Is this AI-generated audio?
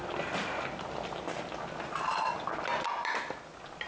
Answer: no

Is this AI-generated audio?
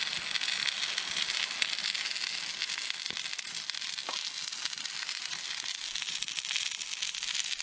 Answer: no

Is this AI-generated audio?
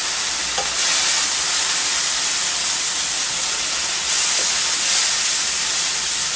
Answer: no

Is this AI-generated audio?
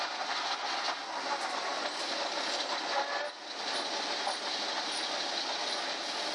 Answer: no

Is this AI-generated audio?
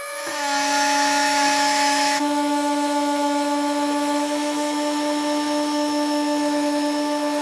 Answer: yes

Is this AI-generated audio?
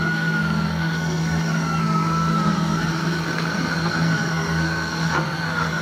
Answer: yes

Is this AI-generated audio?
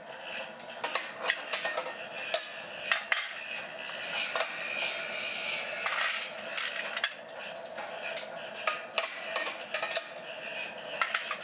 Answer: no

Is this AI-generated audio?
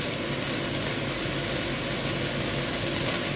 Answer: no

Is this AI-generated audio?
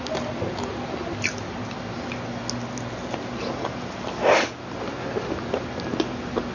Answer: no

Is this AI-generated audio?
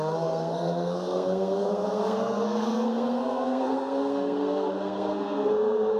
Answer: yes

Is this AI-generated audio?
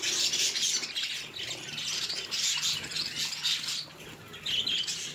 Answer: no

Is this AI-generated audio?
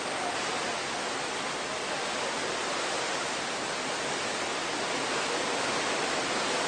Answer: no